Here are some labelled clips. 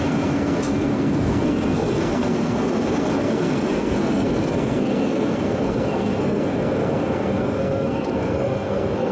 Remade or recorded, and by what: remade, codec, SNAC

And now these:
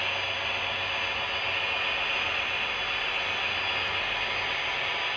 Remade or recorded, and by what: recorded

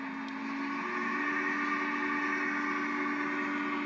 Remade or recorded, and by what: recorded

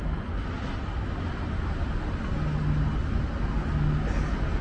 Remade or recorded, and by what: recorded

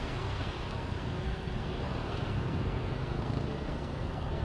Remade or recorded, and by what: remade, codec, SNAC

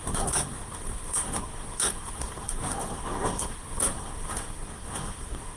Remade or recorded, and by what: remade, codec, SNAC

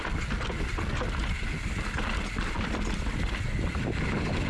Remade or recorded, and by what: recorded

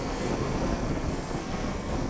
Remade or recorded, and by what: remade, codec, SNAC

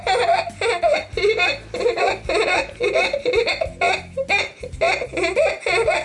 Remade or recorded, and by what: recorded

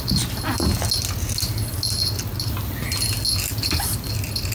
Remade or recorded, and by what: recorded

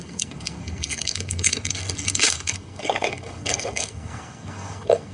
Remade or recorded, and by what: remade, codec, SNAC